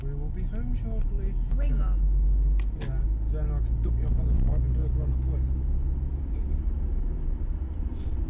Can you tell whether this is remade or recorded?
recorded